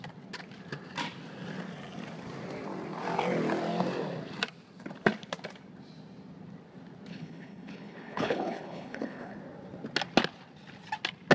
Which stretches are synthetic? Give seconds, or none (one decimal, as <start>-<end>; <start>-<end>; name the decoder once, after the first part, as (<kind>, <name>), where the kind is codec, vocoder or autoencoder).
7.1-9.4 (codec, HILCodec)